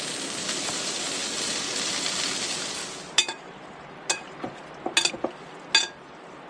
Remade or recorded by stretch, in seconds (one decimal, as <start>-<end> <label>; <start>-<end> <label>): 0.0-1.2 recorded; 1.2-1.9 remade; 1.9-6.5 recorded